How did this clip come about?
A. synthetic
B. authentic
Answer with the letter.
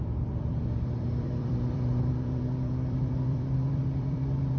A